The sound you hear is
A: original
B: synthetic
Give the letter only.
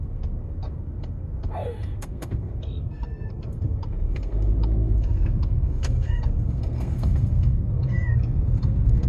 B